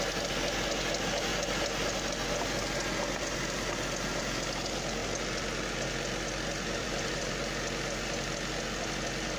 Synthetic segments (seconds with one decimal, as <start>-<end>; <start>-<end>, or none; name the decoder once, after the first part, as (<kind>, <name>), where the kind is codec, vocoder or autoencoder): 6.8-7.4 (vocoder, BigVGAN v2)

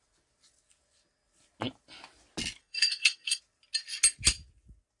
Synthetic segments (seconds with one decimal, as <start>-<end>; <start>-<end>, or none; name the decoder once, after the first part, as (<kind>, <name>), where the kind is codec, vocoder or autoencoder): 2.6-3.4 (codec, SNAC)

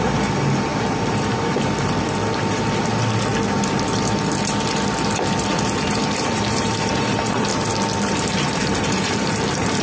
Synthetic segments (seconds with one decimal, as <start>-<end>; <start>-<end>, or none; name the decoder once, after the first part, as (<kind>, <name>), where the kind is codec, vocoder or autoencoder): 0.0-2.9 (vocoder, BigVGAN v2); 6.0-7.5; 8.1-9.8

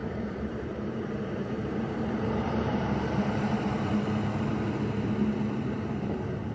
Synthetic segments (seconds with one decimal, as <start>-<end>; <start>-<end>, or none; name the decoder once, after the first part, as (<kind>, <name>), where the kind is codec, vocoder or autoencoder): 0.0-3.9 (vocoder, BigVGAN v2)